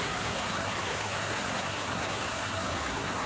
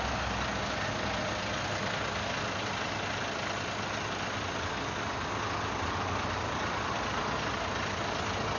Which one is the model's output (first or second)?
first